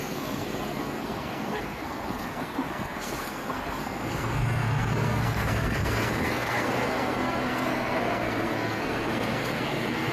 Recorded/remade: remade